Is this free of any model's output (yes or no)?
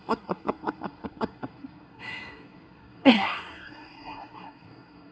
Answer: no